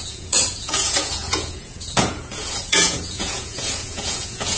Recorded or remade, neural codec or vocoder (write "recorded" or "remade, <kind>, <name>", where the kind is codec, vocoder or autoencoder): remade, vocoder, Vocos